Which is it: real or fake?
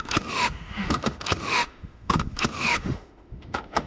fake